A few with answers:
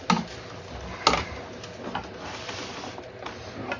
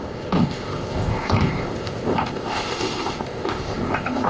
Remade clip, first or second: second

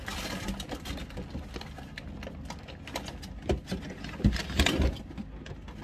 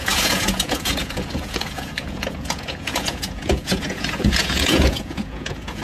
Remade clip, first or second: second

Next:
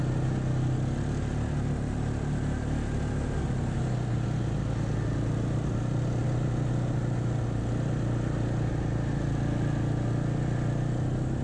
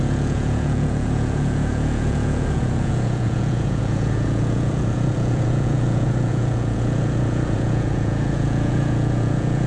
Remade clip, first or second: second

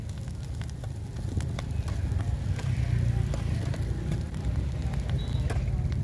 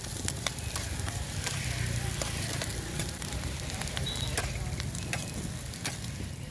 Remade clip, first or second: second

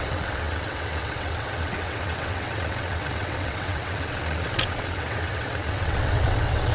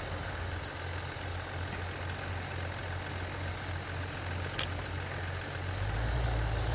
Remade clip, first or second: first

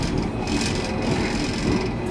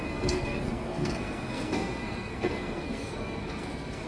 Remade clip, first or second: second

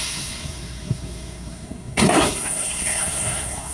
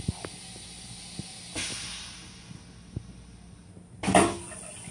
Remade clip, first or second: first